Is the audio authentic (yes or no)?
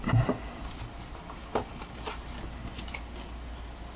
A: yes